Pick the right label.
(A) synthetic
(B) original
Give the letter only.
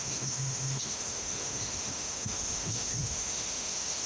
A